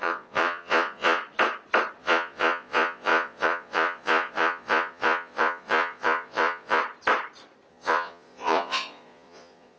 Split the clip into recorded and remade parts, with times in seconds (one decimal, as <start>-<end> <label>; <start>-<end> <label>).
0.0-1.2 remade; 1.2-2.0 recorded; 2.0-6.8 remade; 6.8-7.7 recorded; 7.7-9.8 remade